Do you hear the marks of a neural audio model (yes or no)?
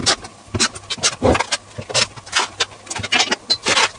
no